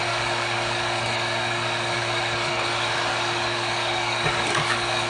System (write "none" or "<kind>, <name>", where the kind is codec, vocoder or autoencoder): codec, DAC